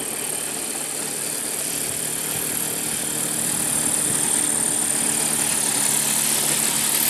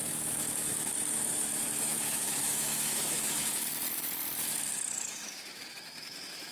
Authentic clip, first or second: first